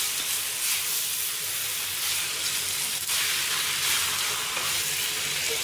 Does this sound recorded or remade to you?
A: recorded